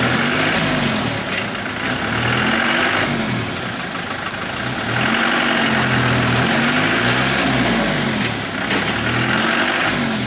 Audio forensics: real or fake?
real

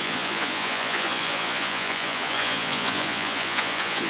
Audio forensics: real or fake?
fake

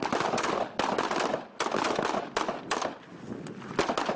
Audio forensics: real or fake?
real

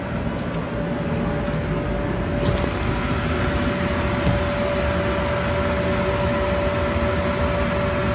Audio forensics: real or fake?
real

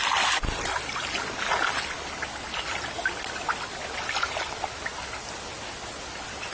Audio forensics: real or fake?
real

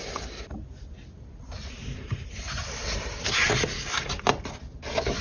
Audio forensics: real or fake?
real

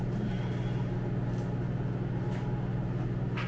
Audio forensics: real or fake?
real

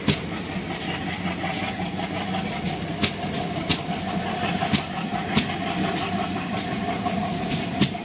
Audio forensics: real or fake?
real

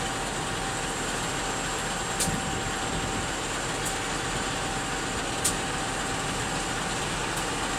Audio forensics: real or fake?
real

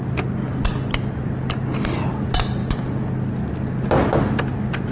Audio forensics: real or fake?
real